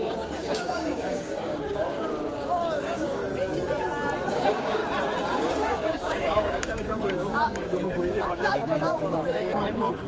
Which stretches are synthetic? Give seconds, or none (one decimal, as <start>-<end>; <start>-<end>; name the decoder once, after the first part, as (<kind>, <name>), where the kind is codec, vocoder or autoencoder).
0.0-3.2 (codec, DAC); 4.3-4.8; 5.4-10.1